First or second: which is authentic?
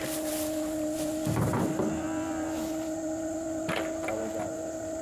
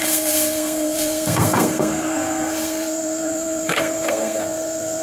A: first